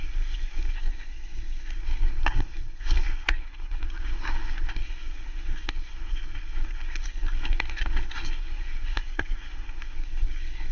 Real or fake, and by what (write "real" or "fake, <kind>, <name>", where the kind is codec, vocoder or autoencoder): fake, codec, SNAC